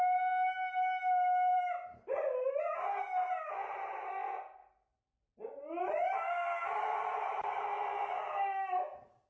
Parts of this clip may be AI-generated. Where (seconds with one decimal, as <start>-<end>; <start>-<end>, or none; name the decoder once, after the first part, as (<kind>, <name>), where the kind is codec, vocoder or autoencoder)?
1.5-2.6 (vocoder, BigVGAN v2)